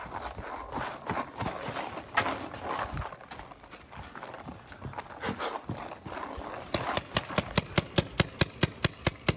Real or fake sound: real